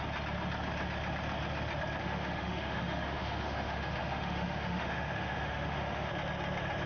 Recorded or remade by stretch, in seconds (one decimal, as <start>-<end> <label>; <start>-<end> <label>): 0.0-2.0 recorded; 2.0-6.1 remade; 6.1-6.9 recorded